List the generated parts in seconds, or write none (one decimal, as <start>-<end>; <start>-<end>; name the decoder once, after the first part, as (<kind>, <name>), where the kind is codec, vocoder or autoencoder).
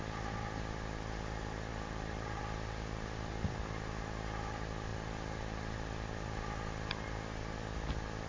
1.7-2.4 (vocoder, BigVGAN v2); 4.9-6.9